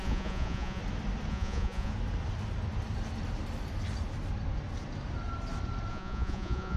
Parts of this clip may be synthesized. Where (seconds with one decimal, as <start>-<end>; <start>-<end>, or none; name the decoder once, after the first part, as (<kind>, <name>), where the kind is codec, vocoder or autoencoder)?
0.0-0.8 (vocoder, Vocos); 1.3-1.9; 5.9-6.8